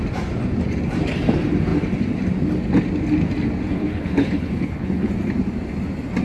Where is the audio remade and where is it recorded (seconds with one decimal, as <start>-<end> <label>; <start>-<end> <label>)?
0.0-3.7 recorded; 3.7-5.1 remade; 5.1-6.2 recorded